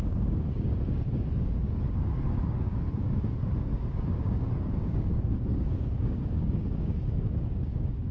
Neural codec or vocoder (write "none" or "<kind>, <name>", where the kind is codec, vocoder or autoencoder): codec, DAC